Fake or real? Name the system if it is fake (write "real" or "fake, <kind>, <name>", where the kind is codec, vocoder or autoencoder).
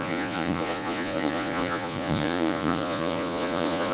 fake, vocoder, Vocos